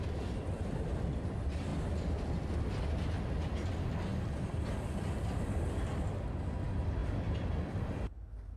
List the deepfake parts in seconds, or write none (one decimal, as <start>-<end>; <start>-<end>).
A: 4.1-4.6